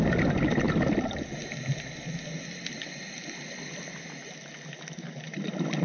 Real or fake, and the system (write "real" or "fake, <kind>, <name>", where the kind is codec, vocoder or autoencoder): real